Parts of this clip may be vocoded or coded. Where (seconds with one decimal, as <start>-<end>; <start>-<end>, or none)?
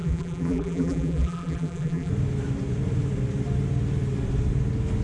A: 0.0-2.1